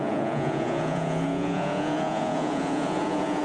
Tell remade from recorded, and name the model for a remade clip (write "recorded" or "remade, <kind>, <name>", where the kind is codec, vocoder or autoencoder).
remade, vocoder, Vocos